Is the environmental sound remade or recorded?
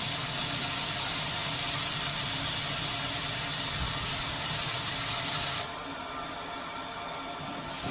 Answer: recorded